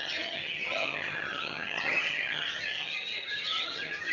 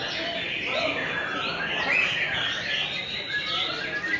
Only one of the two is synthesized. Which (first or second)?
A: first